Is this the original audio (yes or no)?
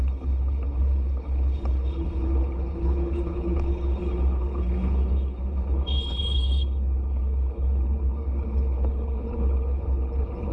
no